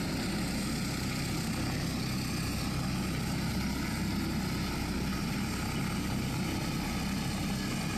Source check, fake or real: real